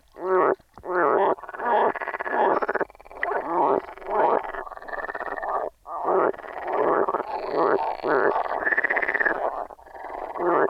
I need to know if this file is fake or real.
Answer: real